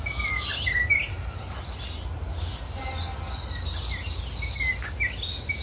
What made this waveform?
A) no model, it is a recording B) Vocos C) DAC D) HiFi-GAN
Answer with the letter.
A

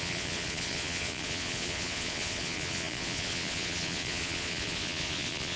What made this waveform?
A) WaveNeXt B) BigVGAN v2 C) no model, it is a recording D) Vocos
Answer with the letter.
D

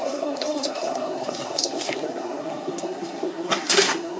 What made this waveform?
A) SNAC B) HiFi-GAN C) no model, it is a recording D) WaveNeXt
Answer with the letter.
A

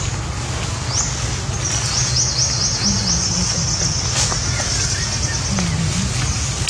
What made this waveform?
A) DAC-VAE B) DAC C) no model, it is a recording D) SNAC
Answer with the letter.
C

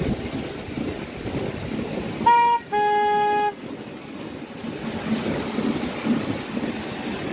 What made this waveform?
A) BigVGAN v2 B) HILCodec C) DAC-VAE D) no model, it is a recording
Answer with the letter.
D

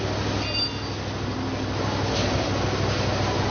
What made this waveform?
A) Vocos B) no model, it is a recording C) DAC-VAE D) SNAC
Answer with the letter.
B